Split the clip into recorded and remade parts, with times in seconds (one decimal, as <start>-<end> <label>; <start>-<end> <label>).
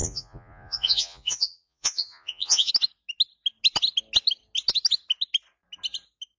0.0-2.7 remade; 2.7-6.4 recorded